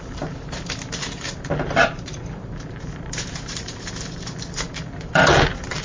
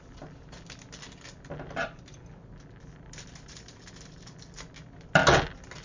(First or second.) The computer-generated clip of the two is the first